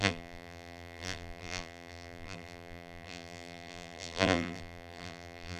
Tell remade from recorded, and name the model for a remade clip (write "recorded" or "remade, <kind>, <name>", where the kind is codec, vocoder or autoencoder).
remade, vocoder, BigVGAN v2